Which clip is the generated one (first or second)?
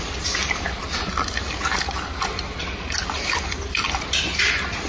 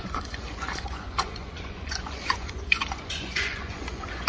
second